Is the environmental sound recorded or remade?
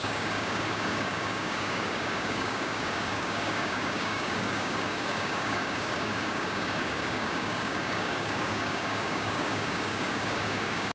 remade